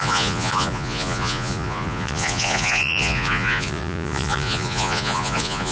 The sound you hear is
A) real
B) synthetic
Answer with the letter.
B